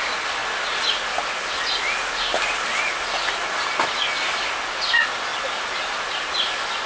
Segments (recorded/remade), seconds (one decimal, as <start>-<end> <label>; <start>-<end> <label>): 0.0-6.9 recorded